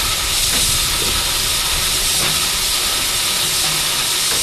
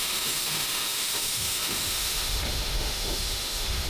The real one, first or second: first